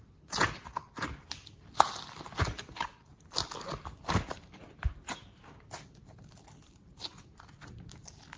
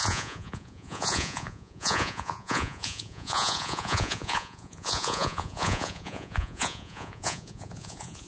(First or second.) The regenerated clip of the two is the second